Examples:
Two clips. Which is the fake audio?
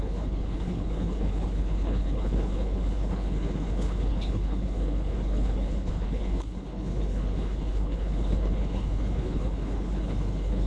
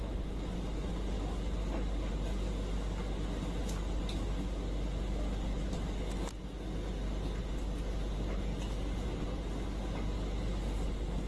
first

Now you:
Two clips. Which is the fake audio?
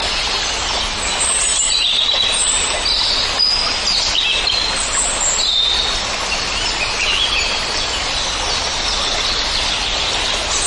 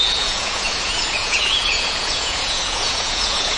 second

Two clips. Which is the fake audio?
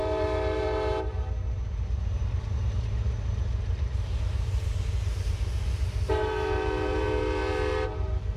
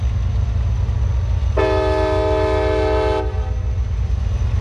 first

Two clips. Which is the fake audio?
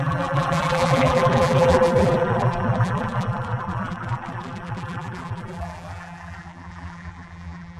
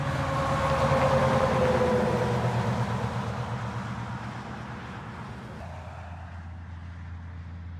first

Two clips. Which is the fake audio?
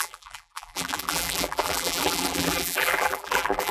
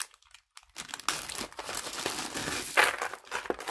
first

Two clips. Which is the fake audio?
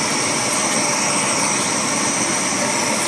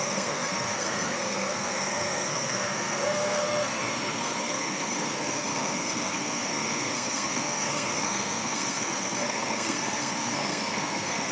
second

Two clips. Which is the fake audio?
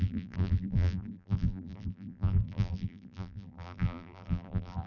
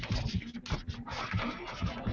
first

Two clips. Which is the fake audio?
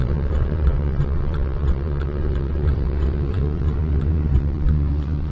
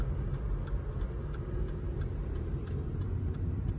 first